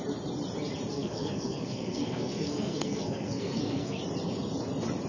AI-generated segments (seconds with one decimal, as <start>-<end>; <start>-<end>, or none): 0.9-4.0